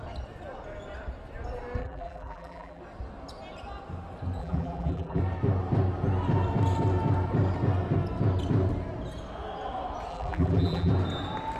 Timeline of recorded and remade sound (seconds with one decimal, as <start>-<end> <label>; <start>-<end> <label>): 0.0-1.8 recorded; 1.8-2.8 remade; 2.8-4.4 recorded; 4.4-5.2 remade; 5.2-10.1 recorded; 10.1-10.9 remade; 10.9-11.6 recorded